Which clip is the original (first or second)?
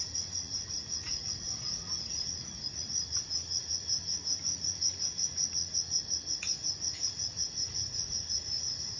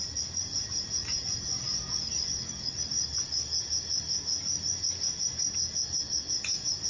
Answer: second